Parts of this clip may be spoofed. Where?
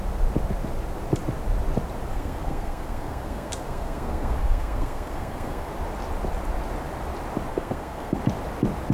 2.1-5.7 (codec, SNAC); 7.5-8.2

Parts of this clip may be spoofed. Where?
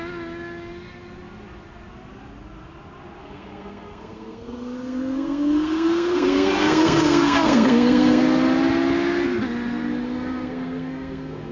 3.2-8.2 (codec, SNAC); 10.0-11.5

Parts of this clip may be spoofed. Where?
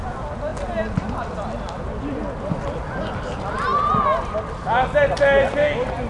none